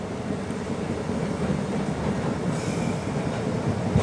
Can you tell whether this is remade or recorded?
recorded